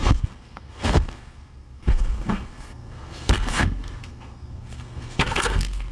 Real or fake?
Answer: fake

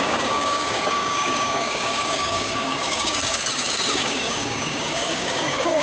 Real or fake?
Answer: fake